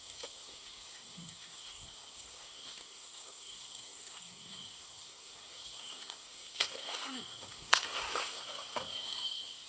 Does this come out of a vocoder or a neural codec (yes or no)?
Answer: yes